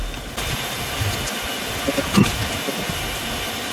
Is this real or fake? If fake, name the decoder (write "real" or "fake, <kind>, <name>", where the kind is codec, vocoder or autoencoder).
real